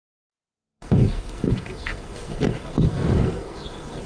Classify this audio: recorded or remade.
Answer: remade